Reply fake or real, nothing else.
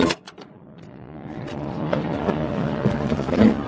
fake